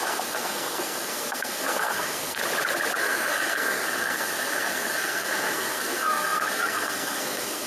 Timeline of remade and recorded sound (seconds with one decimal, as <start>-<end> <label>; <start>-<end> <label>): 0.0-2.4 remade; 2.4-3.0 recorded; 3.0-7.7 remade